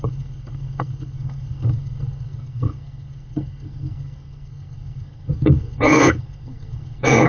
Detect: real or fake fake